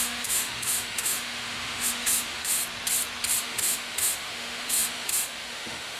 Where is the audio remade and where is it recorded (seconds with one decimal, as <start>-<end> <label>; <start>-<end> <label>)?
0.0-2.6 remade; 2.6-3.4 recorded; 3.4-6.0 remade